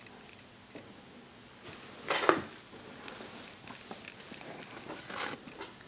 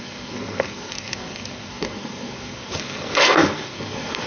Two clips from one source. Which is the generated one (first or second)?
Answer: second